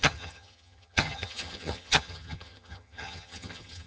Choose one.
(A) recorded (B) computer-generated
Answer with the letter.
B